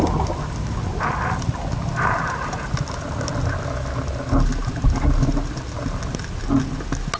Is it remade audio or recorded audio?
recorded